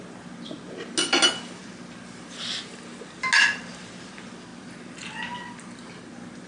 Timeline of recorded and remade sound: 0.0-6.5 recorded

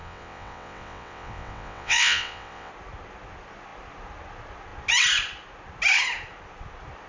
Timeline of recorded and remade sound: 0.0-2.7 remade; 2.7-7.1 recorded

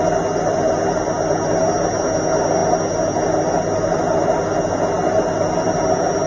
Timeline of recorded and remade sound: 0.0-6.3 recorded

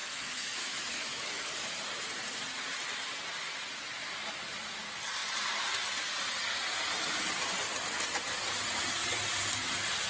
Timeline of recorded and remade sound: 0.0-1.4 remade; 1.4-10.1 recorded

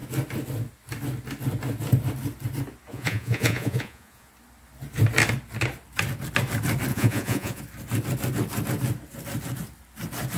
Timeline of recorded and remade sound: 0.0-2.9 recorded; 2.9-4.3 remade; 4.3-6.9 recorded; 6.9-7.6 remade; 7.6-10.4 recorded

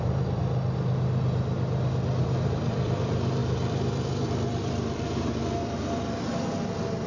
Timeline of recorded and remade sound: 0.0-0.4 remade; 0.4-2.2 recorded; 2.2-7.1 remade

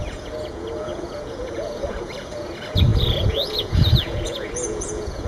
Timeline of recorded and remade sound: 0.0-5.3 remade